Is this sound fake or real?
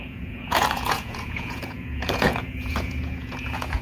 fake